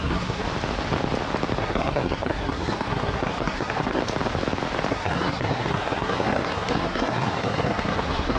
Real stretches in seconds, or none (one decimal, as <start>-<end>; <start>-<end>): 0.4-1.6; 4.0-4.9